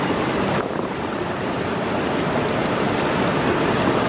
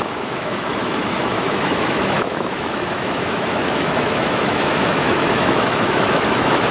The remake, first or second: second